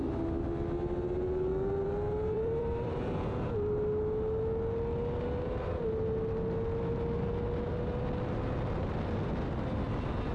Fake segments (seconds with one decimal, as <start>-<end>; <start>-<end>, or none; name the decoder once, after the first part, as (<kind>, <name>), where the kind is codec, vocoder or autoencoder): 1.5-3.1 (vocoder, BigVGAN v2)